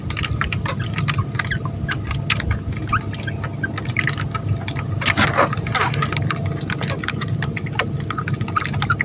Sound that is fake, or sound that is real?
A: real